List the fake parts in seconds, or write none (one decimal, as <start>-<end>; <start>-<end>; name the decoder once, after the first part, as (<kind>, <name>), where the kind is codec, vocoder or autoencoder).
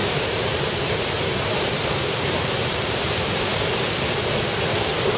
0.0-3.5 (vocoder, BigVGAN v2); 4.7-5.2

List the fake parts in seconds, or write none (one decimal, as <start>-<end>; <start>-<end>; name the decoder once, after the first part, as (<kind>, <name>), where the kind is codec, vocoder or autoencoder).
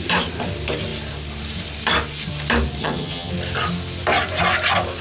2.8-3.3 (vocoder, HiFi-GAN)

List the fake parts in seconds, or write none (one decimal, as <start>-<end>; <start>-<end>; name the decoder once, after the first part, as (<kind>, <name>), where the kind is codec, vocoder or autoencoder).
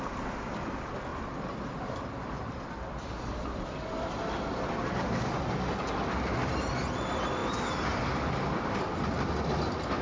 none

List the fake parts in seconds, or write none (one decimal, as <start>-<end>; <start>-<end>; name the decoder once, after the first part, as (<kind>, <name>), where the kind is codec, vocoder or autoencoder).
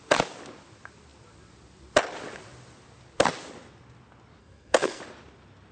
4.4-5.0 (codec, SNAC)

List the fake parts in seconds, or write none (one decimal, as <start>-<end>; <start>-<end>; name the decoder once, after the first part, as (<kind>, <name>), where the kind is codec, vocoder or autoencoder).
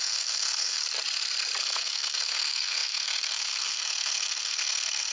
0.0-0.8 (codec, SNAC); 1.6-5.1